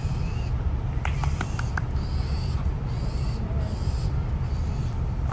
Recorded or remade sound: recorded